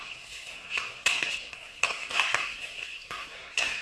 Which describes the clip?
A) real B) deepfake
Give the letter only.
B